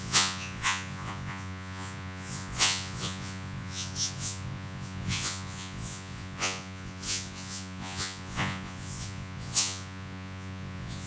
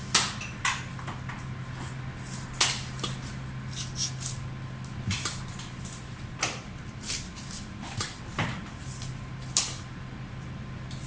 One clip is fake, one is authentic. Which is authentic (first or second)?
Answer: second